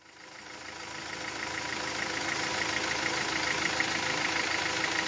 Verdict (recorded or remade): recorded